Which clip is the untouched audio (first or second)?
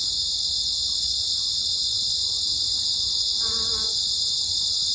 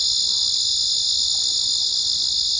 second